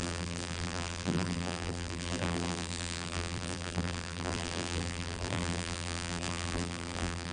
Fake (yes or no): yes